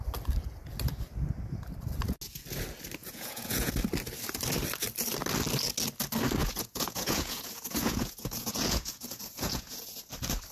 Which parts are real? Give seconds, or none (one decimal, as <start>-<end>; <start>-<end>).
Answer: 0.0-3.0; 3.7-6.4; 10.1-10.5